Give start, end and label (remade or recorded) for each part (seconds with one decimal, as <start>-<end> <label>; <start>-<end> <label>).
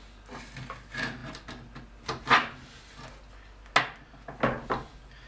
0.0-5.3 recorded